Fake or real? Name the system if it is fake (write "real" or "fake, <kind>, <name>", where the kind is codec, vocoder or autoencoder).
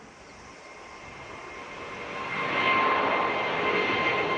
real